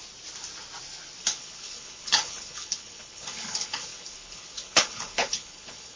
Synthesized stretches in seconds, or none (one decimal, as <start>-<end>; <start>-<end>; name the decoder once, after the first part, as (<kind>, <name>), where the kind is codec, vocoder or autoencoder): 1.2-6.0 (codec, HILCodec)